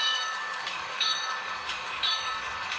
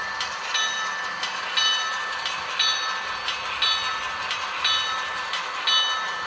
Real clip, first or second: second